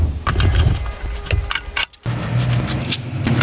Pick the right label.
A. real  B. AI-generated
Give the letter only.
A